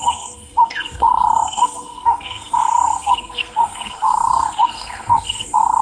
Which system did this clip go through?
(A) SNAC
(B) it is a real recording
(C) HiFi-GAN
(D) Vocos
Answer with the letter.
A